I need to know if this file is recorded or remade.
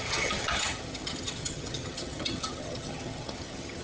remade